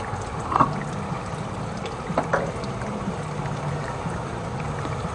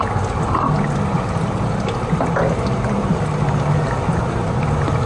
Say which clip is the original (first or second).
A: second